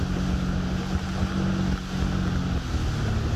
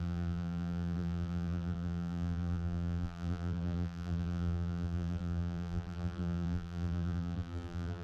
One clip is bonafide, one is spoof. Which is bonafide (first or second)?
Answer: first